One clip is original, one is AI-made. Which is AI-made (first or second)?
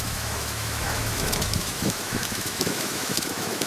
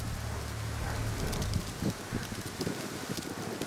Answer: first